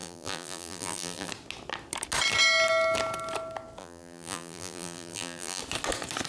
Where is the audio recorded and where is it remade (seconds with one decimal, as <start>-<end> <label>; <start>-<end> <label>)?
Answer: 0.0-1.3 remade; 1.3-3.8 recorded; 3.8-5.6 remade; 5.6-6.3 recorded